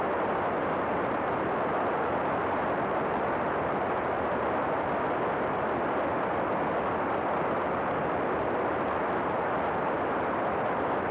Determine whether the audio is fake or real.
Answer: real